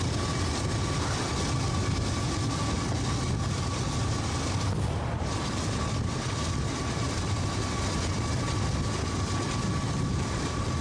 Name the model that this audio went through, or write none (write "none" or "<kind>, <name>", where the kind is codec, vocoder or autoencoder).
none